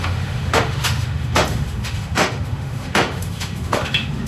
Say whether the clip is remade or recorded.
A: remade